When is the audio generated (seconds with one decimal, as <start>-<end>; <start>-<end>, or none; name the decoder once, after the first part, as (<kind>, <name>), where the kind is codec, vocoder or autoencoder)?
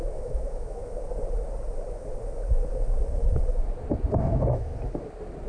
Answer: 0.0-0.8 (autoencoder, DAC-VAE); 4.1-4.7